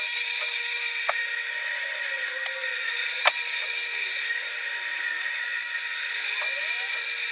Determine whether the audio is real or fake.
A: real